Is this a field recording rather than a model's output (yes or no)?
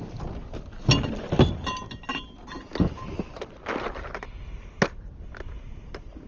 yes